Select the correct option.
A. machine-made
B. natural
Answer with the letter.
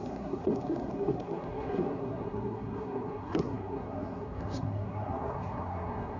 A